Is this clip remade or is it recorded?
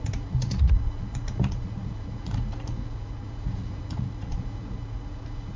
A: remade